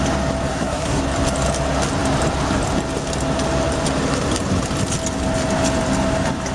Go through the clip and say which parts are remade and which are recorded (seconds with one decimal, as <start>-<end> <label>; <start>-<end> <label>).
0.0-0.5 recorded; 0.5-1.0 remade; 1.0-6.5 recorded